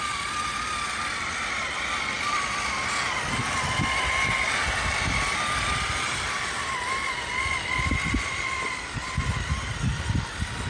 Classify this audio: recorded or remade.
recorded